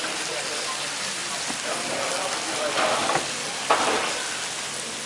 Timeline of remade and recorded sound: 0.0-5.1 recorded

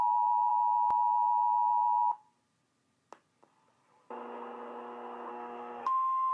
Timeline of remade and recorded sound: 0.0-5.3 recorded; 5.3-6.3 remade

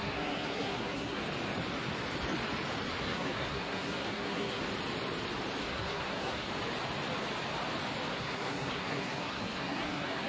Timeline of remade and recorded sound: 0.0-1.2 remade; 1.2-3.0 recorded; 3.0-4.6 remade; 4.6-5.6 recorded; 5.6-6.5 remade; 6.5-8.1 recorded; 8.1-10.3 remade

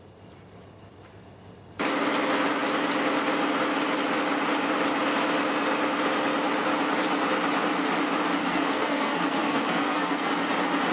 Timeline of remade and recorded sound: 0.0-8.4 recorded; 8.4-10.3 remade; 10.3-10.9 recorded

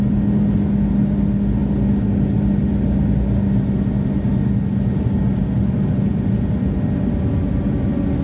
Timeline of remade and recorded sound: 0.0-8.2 recorded

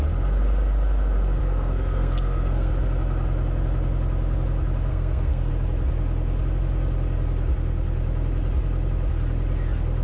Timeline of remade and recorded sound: 0.0-1.4 recorded; 1.4-2.7 remade; 2.7-4.9 recorded; 4.9-5.5 remade; 5.5-10.0 recorded

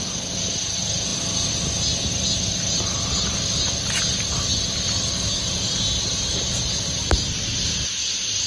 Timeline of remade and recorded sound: 0.0-8.5 recorded